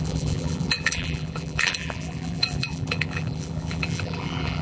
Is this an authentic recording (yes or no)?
no